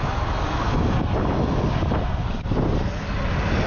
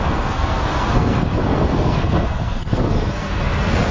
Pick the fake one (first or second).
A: second